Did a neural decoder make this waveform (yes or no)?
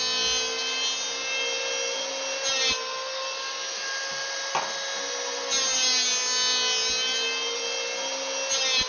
no